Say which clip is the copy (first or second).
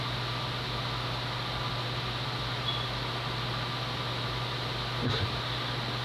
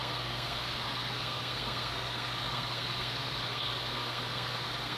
second